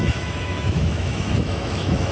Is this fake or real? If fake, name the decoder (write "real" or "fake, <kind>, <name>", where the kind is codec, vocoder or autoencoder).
fake, autoencoder, DAC-VAE